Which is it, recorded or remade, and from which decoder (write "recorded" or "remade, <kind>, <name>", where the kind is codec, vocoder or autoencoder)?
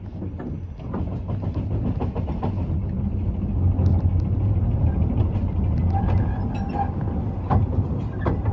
recorded